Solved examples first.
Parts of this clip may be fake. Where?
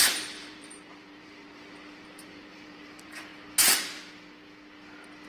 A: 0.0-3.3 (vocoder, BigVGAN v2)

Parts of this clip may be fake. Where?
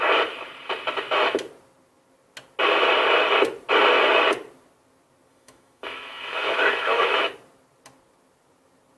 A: 5.3-7.3 (autoencoder, DAC-VAE)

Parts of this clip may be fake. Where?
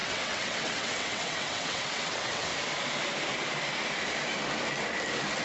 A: 0.0-2.5 (vocoder, WaveNeXt)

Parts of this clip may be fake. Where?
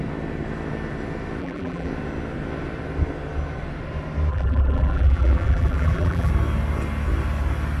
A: 1.4-1.9 (vocoder, BigVGAN v2); 4.3-6.3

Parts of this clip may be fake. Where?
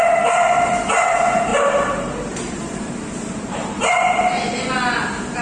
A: 1.5-4.7 (vocoder, BigVGAN v2)